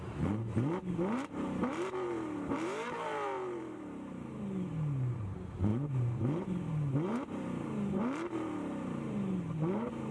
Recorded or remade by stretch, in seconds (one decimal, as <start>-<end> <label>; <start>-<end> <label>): 0.0-10.1 remade